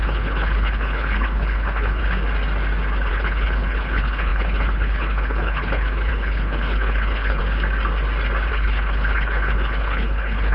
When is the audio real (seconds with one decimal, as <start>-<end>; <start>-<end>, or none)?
2.0-3.1; 7.4-8.5